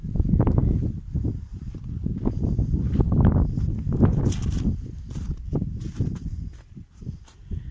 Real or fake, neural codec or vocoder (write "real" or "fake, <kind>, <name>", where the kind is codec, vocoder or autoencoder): real